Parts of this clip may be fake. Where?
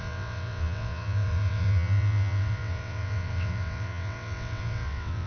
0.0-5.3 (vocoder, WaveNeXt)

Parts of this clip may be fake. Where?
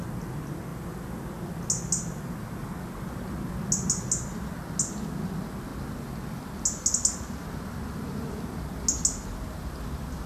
none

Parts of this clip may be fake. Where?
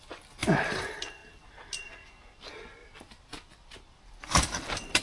2.8-5.0 (vocoder, BigVGAN v2)